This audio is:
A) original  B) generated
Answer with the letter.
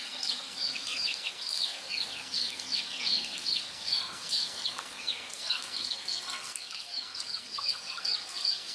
B